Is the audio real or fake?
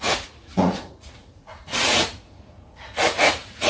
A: fake